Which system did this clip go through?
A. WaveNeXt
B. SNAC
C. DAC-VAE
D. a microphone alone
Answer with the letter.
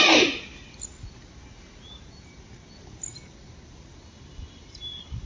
D